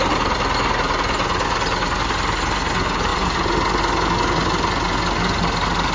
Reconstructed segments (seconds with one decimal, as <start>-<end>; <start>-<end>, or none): 3.1-3.8